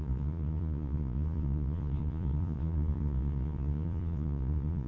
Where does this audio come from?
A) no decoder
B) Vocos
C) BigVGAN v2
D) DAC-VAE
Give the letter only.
B